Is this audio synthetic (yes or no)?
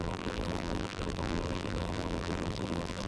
yes